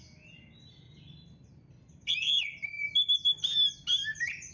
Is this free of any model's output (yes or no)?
yes